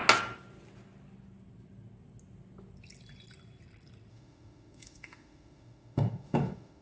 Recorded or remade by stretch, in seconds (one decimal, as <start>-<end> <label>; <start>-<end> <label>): 0.0-4.1 recorded; 4.1-6.8 remade